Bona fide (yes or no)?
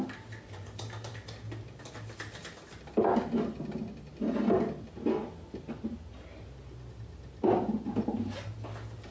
yes